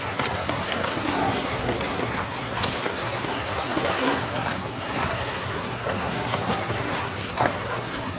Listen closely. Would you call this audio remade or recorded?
remade